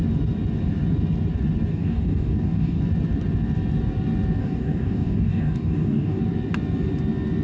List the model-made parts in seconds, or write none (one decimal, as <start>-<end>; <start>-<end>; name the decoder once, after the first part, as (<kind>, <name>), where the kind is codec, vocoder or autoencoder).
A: 1.7-2.8 (codec, DAC); 4.4-6.2